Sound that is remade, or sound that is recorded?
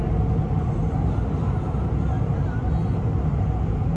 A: recorded